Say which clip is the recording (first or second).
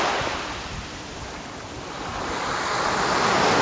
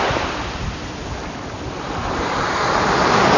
second